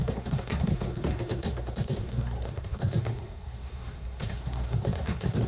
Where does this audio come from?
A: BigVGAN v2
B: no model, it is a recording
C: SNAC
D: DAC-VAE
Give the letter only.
C